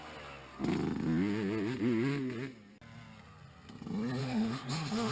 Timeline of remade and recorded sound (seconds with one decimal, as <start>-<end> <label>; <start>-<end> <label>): 0.0-4.2 recorded; 4.2-5.1 remade